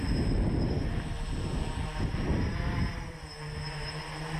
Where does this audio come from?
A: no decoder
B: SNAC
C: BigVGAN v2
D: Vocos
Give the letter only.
A